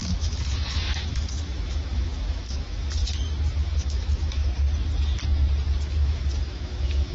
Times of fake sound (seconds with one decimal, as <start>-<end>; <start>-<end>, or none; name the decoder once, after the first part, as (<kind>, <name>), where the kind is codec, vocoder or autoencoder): 0.0-3.0 (autoencoder, DAC-VAE); 3.6-4.4; 5.8-7.1